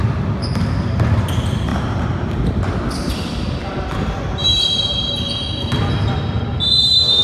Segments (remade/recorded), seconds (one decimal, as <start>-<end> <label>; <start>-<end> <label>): 0.0-7.2 recorded